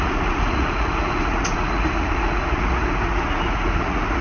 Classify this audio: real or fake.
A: fake